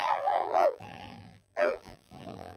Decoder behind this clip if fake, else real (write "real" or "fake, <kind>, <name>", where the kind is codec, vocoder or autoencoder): fake, vocoder, BigVGAN v2